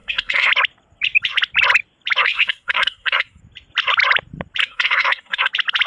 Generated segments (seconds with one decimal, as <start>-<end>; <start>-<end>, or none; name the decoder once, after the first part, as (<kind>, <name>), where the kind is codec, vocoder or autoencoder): 0.0-0.5 (codec, SNAC); 2.2-3.4; 4.6-5.5